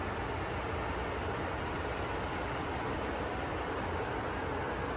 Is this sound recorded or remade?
recorded